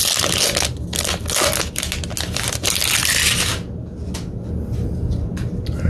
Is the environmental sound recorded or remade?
recorded